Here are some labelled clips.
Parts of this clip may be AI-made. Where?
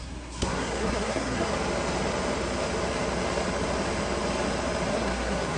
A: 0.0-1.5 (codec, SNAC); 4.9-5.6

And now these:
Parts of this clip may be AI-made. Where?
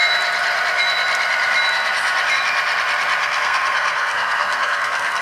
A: 3.2-5.2 (codec, SNAC)